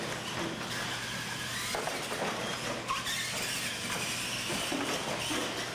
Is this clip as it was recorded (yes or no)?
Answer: yes